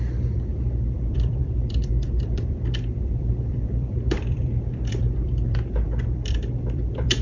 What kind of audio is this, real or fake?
fake